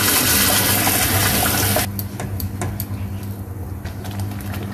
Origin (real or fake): real